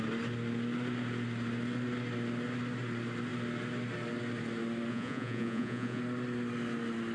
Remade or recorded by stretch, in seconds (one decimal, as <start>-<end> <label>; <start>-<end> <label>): 0.0-4.9 recorded; 4.9-6.0 remade; 6.0-7.1 recorded